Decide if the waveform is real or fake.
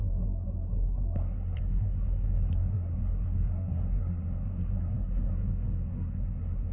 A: fake